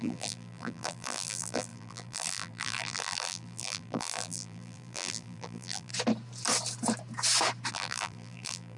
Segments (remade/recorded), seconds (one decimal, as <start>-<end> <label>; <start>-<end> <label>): 0.0-5.9 remade; 5.9-7.7 recorded; 7.7-8.8 remade